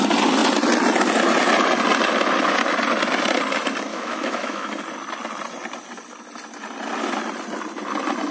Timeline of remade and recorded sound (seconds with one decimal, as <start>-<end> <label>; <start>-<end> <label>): 0.0-3.9 recorded; 3.9-4.7 remade; 4.7-8.3 recorded